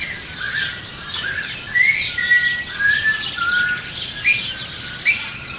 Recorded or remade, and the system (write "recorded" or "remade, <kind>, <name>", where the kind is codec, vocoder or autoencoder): recorded